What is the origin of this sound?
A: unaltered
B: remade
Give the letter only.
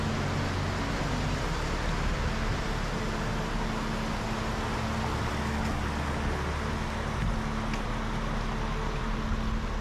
A